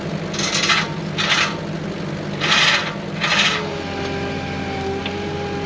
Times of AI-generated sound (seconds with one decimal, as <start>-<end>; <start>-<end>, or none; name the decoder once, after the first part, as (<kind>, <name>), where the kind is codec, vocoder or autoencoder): none